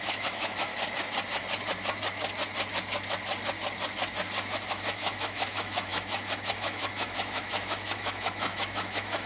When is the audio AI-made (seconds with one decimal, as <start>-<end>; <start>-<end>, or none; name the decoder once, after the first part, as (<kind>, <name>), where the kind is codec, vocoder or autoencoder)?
0.0-0.7 (autoencoder, DAC-VAE); 4.7-9.3